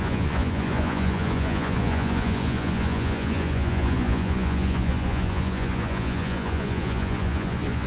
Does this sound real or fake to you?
fake